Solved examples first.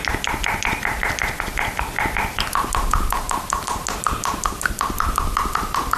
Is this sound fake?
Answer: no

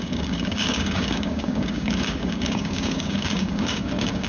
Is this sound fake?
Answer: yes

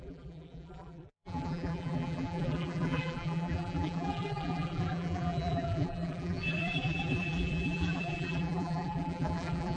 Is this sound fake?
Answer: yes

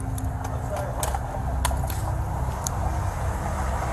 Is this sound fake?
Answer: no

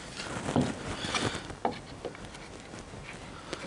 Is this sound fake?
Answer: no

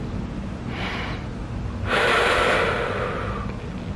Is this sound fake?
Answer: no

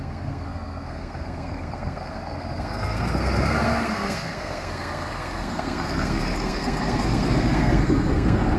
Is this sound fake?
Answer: yes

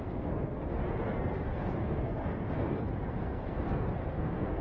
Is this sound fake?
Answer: yes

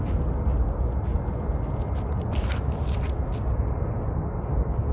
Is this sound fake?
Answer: no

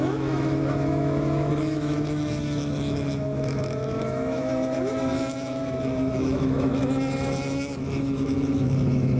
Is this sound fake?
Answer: yes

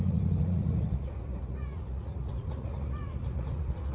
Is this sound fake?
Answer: yes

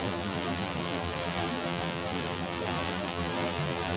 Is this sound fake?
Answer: yes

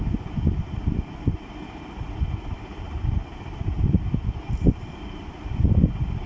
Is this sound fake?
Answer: no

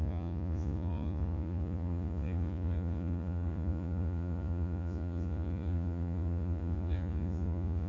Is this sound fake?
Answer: yes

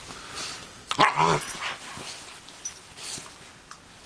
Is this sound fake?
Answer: no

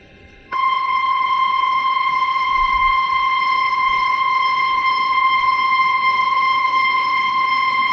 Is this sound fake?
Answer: yes